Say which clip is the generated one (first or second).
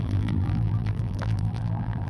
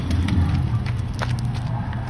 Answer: first